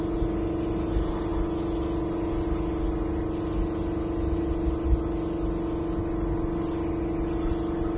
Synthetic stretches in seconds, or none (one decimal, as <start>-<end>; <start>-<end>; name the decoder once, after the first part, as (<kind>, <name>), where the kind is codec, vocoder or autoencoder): none